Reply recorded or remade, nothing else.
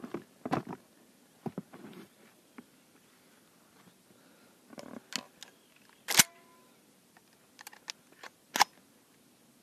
recorded